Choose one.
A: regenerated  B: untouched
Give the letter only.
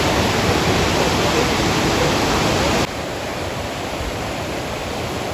B